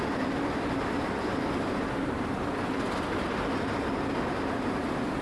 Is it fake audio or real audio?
real